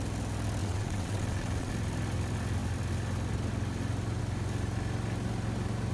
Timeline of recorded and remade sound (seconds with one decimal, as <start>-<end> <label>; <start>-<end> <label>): 0.0-0.6 recorded; 0.6-1.7 remade; 1.7-5.9 recorded